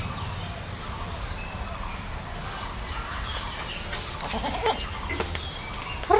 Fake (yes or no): no